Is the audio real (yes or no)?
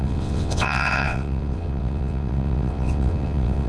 no